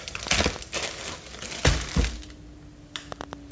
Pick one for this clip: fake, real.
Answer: real